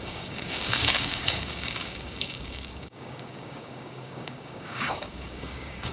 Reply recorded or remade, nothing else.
remade